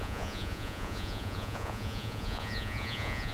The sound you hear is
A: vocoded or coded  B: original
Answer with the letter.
A